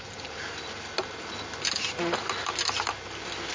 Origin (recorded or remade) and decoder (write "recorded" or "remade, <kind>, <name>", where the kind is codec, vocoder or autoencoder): recorded